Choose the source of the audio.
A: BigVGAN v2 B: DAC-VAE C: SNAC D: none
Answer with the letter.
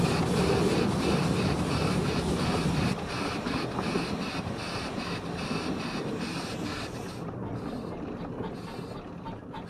D